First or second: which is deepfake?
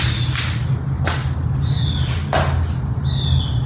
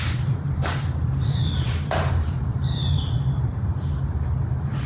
second